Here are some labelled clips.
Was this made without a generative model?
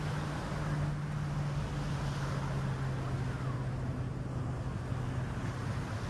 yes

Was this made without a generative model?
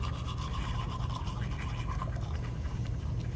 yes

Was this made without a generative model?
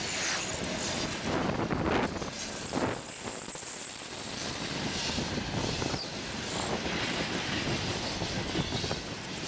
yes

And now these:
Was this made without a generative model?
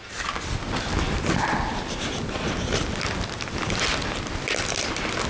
yes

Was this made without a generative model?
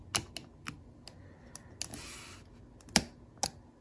yes